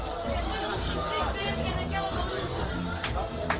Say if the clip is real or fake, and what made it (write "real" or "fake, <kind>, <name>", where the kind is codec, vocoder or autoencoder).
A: real